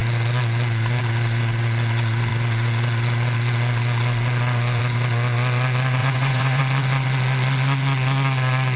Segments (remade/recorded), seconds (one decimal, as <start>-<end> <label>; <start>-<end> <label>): 0.0-6.0 recorded; 6.0-6.6 remade; 6.6-8.8 recorded

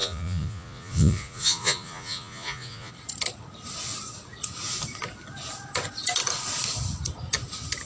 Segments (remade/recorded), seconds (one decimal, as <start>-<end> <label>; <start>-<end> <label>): 0.0-2.9 remade; 2.9-7.9 recorded

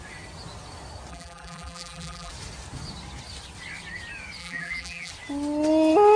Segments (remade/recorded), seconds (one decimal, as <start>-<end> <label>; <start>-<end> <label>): 0.0-1.1 recorded; 1.1-2.3 remade; 2.3-4.4 recorded; 4.4-5.1 remade; 5.1-6.2 recorded

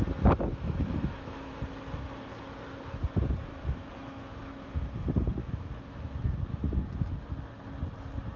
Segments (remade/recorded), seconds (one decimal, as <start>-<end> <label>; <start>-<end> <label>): 0.0-0.5 recorded; 0.5-1.5 remade; 1.5-3.5 recorded; 3.5-4.9 remade; 4.9-5.4 recorded; 5.4-6.3 remade; 6.3-8.4 recorded